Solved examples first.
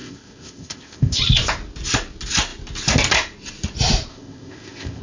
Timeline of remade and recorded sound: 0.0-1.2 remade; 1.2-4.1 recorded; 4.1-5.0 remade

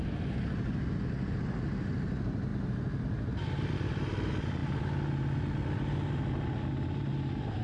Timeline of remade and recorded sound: 0.0-7.6 recorded

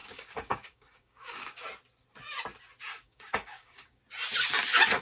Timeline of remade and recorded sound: 0.0-1.6 remade; 1.6-2.9 recorded; 2.9-4.0 remade; 4.0-5.0 recorded

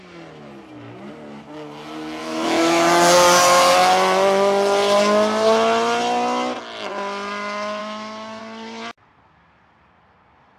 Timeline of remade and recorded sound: 0.0-2.2 recorded; 2.2-2.8 remade; 2.8-7.8 recorded; 7.8-8.4 remade; 8.4-10.6 recorded

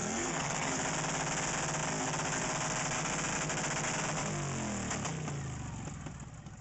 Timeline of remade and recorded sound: 0.0-0.7 remade; 0.7-6.6 recorded